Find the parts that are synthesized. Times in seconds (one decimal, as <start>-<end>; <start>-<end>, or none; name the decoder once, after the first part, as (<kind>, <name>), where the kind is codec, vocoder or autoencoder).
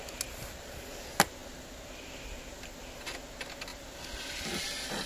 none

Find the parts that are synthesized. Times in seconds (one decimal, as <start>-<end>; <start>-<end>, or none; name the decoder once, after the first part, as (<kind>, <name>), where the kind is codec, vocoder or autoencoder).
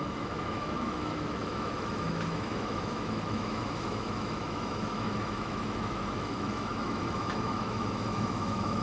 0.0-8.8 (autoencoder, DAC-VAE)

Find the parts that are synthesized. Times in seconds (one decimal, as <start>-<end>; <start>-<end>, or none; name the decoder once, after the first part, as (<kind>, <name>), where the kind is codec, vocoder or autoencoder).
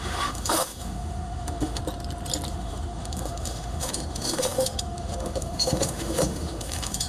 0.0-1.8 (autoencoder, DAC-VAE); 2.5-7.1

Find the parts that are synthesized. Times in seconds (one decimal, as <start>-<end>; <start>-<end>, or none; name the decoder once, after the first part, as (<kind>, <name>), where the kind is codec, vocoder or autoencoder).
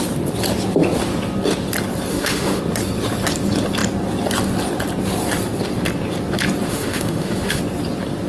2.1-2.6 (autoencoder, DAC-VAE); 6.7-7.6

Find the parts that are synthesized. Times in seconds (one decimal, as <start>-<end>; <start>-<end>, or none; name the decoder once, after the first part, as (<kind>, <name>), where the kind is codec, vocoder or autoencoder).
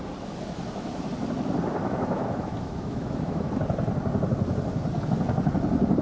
1.8-3.5 (autoencoder, DAC-VAE)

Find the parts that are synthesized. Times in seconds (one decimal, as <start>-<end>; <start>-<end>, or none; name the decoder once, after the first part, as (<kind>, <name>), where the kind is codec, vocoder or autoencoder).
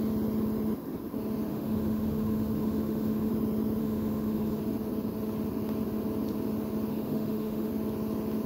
1.5-3.3 (autoencoder, DAC-VAE); 3.8-4.6; 6.9-7.7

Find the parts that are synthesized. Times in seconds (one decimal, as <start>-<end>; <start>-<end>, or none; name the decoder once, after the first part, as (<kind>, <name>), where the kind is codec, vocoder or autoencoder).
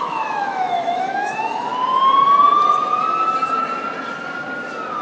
0.0-1.7 (autoencoder, DAC-VAE)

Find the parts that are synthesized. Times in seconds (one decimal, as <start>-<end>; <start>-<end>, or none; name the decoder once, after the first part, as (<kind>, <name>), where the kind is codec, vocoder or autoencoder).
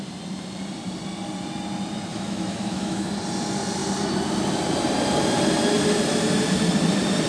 2.1-3.1 (autoencoder, DAC-VAE)